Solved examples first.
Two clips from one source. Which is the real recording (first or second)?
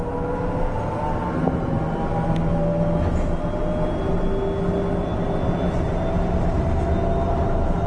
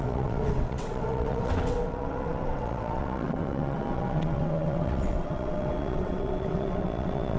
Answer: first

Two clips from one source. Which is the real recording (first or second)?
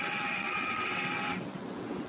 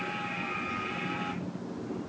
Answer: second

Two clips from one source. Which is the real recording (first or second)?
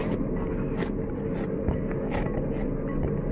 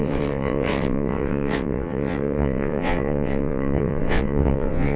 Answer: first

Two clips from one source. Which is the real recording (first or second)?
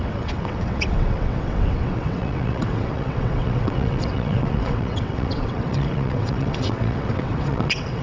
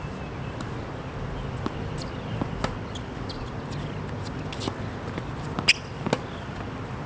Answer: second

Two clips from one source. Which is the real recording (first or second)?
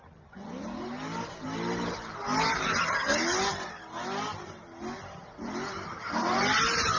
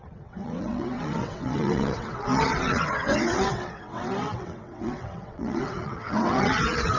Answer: first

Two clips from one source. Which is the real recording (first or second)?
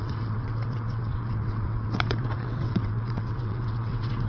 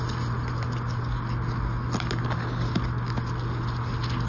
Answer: second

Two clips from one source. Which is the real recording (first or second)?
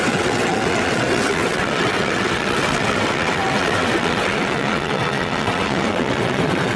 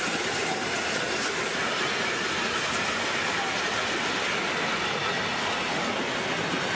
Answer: second